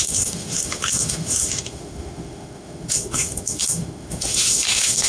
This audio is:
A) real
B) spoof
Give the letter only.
B